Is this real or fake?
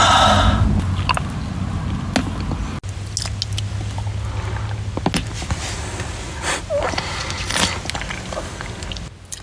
real